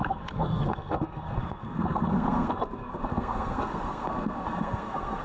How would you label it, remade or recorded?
remade